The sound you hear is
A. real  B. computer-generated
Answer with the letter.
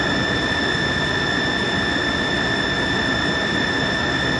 A